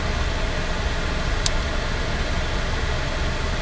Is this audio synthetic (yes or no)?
no